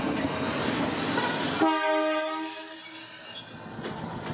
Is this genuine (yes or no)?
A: yes